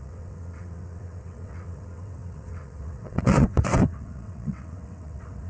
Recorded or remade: remade